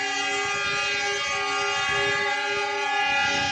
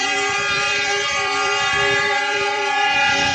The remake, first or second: second